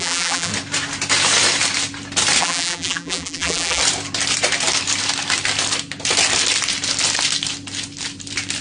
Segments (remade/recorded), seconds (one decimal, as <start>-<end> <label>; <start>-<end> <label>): 0.0-0.5 remade; 0.5-2.4 recorded; 2.4-3.8 remade; 3.8-8.6 recorded